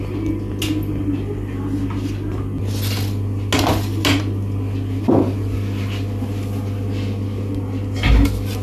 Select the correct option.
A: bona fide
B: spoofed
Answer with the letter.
A